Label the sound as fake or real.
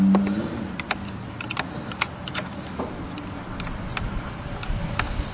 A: real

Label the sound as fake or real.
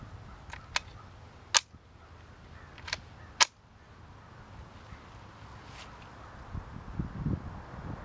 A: real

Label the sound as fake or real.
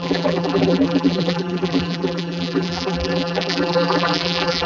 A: fake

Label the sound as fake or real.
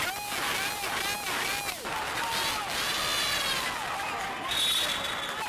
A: real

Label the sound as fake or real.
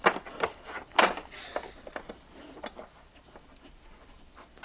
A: real